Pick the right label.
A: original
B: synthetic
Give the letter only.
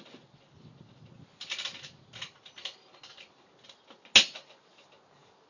A